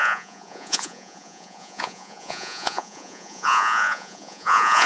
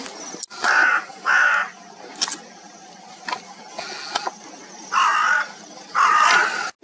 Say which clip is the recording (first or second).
second